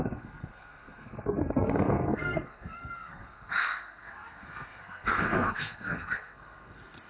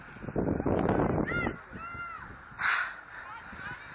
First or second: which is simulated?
first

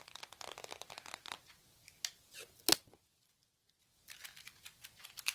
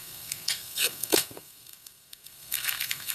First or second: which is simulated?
second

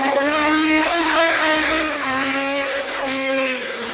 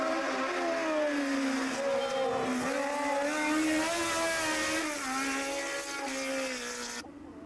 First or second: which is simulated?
first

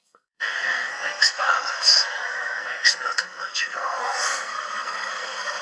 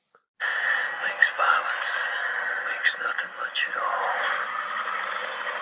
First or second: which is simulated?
first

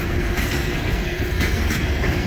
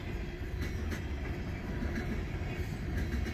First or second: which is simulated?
first